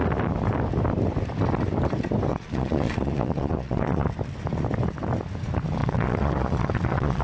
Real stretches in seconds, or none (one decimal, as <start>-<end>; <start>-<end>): 0.0-2.3; 4.1-5.8

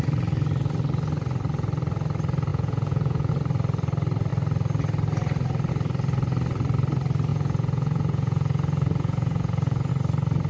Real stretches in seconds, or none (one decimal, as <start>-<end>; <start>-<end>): 0.0-2.5; 3.3-7.3; 9.9-10.5

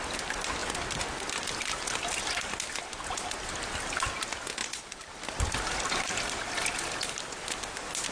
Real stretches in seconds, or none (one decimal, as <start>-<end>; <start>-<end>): 0.0-4.6; 5.1-8.1

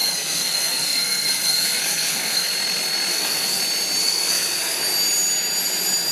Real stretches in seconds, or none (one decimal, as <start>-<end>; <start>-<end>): 2.5-3.1; 3.6-4.0; 4.8-6.1